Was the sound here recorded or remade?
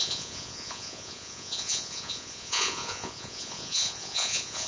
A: remade